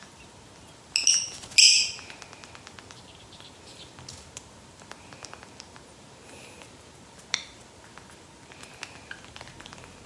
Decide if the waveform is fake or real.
real